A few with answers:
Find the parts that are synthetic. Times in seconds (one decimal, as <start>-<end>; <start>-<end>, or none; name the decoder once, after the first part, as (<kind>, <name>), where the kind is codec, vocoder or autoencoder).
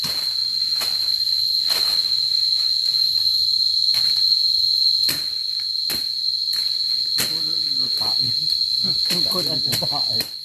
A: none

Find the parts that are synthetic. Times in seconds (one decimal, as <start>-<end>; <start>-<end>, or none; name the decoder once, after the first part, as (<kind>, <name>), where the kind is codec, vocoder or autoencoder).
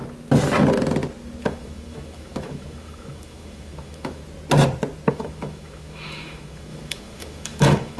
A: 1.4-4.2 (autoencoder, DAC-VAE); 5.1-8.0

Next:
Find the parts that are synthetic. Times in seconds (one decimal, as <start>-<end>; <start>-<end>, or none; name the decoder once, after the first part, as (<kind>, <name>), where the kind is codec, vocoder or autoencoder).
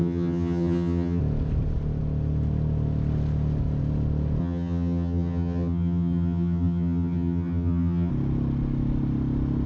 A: 0.0-1.2 (vocoder, HiFi-GAN); 4.4-8.1